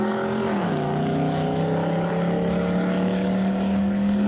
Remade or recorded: remade